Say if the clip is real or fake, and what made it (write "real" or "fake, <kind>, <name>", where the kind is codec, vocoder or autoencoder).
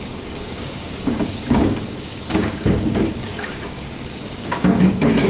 fake, codec, DAC